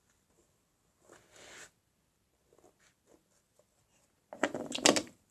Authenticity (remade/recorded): recorded